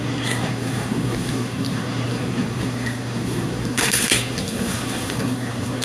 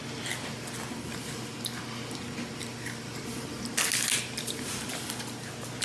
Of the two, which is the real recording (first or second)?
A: second